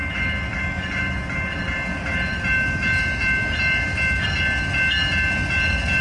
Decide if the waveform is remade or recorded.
recorded